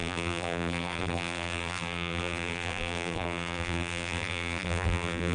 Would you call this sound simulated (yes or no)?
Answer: yes